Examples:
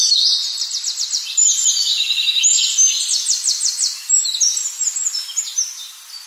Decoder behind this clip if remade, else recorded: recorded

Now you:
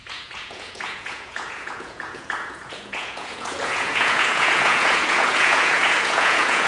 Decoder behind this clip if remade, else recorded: remade, vocoder, Vocos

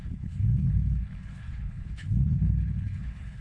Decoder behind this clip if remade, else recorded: remade, codec, HILCodec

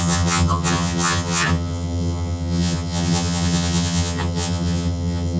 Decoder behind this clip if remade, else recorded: remade, vocoder, HiFi-GAN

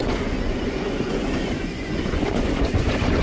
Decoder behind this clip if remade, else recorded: remade, vocoder, Vocos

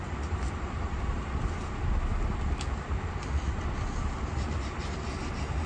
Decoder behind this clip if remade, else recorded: recorded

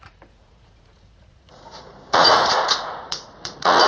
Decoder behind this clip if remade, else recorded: remade, vocoder, Vocos